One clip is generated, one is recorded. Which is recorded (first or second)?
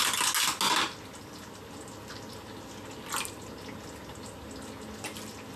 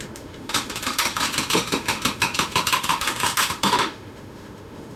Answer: first